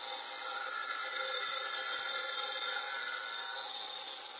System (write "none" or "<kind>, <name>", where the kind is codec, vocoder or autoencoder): none